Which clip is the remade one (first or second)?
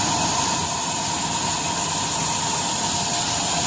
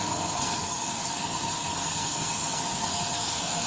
second